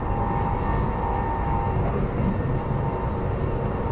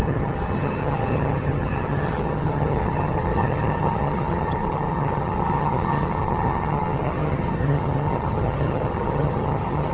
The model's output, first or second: second